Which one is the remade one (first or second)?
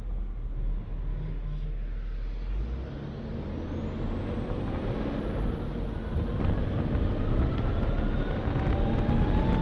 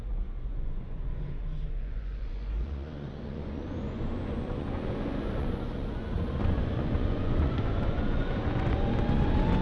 second